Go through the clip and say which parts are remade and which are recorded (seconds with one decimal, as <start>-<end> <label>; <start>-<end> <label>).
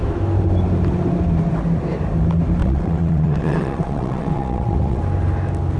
0.0-2.6 recorded; 2.6-5.0 remade; 5.0-5.8 recorded